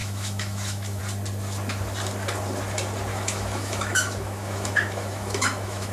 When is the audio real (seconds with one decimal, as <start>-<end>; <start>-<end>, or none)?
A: 1.0-3.1